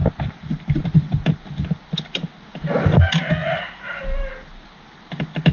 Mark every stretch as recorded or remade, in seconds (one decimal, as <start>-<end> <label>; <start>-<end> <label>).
0.0-3.4 recorded; 3.4-4.0 remade; 4.0-5.5 recorded